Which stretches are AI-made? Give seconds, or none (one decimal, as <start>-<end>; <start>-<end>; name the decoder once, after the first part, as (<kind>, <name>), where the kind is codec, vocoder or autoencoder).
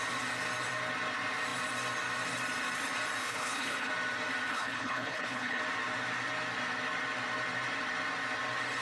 3.2-3.9 (codec, HILCodec); 4.5-5.6